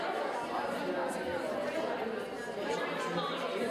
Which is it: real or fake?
real